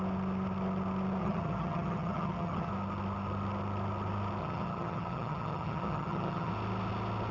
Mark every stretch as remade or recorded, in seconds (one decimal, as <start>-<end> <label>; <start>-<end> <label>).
0.0-1.2 recorded; 1.2-2.7 remade; 2.7-4.4 recorded; 4.4-6.5 remade; 6.5-7.3 recorded